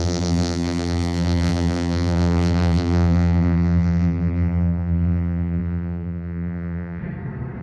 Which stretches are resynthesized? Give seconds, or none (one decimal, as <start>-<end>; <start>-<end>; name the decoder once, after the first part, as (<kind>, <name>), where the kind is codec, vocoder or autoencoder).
0.0-7.0 (vocoder, BigVGAN v2)